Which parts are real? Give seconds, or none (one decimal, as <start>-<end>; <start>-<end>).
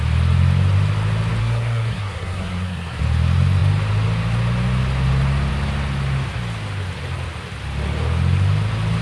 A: 0.0-1.4; 3.0-9.0